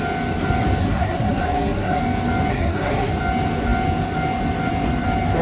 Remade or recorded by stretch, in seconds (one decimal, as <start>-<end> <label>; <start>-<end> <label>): 0.0-0.8 recorded; 0.8-2.0 remade; 2.0-2.5 recorded; 2.5-3.1 remade; 3.1-5.4 recorded